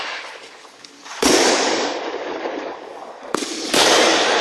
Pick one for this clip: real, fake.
fake